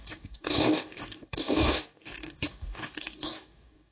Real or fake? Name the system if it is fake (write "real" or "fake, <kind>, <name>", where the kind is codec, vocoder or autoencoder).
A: fake, codec, DAC